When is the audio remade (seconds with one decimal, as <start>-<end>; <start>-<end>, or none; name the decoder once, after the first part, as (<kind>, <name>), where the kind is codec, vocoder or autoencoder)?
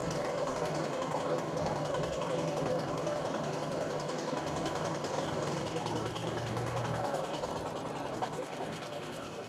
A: 0.0-7.5 (codec, DAC); 8.1-9.5